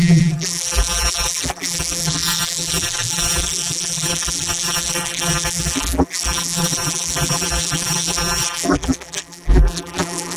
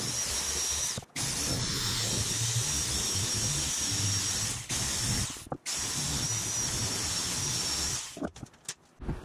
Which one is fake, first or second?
first